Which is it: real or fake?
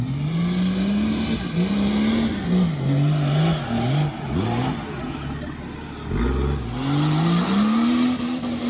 real